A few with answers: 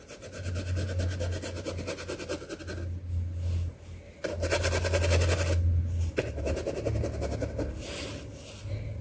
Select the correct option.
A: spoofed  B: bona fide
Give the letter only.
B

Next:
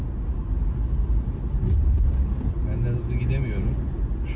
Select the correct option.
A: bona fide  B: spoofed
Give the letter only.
A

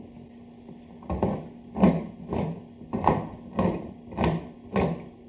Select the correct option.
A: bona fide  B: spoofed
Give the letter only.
A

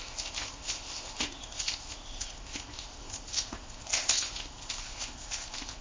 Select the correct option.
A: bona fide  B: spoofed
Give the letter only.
B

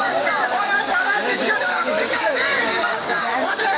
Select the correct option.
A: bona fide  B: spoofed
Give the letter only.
B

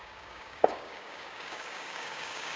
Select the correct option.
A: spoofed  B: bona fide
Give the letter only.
A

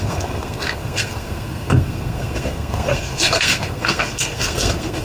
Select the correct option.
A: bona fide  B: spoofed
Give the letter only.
B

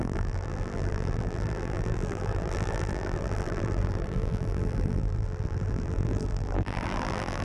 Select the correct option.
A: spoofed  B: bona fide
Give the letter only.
A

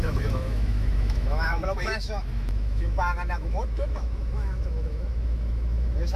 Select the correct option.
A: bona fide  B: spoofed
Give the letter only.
B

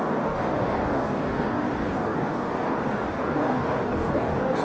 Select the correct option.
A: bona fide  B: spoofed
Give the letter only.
B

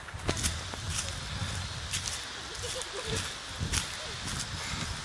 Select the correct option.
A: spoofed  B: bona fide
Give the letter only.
B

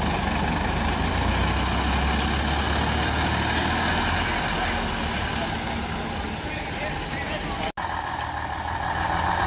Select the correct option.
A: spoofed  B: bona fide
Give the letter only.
B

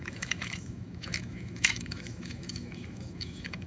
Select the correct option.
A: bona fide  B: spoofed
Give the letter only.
B